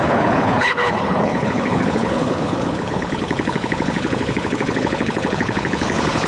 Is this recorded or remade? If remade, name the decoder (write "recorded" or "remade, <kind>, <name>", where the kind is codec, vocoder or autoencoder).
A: remade, codec, HILCodec